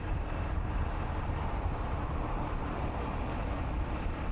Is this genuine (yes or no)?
no